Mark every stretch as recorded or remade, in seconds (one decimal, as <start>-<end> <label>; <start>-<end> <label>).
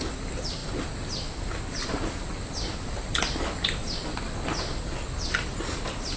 0.0-6.2 recorded